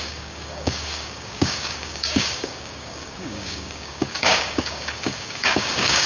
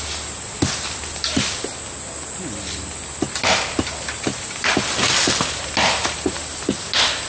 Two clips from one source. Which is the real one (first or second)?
second